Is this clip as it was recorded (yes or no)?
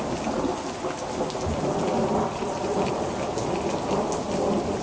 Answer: yes